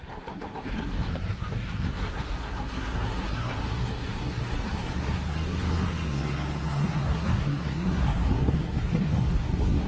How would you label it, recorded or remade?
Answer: remade